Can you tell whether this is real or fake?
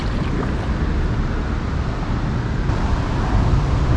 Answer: real